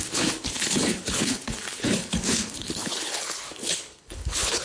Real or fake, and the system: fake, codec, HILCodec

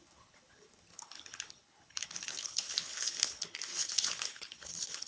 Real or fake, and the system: fake, codec, HILCodec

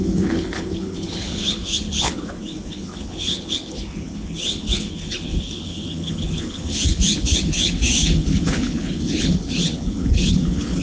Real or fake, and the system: fake, codec, HILCodec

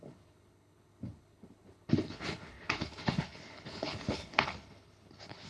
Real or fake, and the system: fake, codec, HILCodec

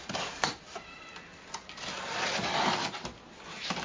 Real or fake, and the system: real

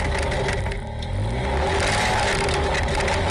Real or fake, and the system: real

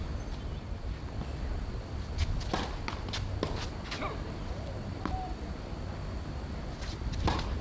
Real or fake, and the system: real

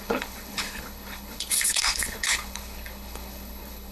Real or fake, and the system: fake, codec, HILCodec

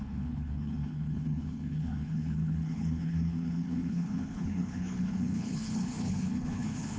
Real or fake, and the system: fake, codec, HILCodec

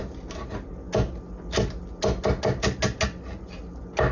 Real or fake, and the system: real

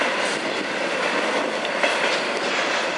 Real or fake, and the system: real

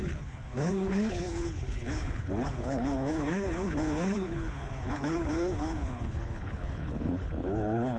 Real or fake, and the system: fake, codec, HILCodec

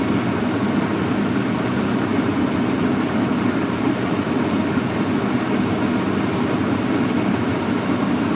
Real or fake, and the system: real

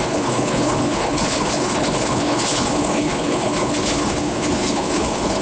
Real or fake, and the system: fake, codec, HILCodec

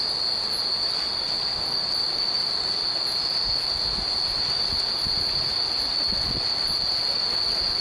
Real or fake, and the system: real